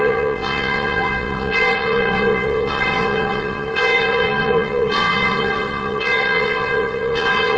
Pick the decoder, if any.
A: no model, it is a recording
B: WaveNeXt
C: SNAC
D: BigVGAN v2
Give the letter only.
B